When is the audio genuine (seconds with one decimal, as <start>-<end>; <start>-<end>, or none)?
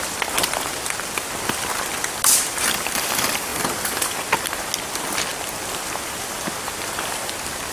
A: 0.0-7.7